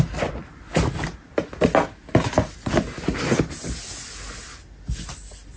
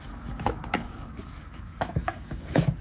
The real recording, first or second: first